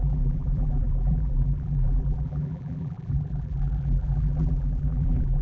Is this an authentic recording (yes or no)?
no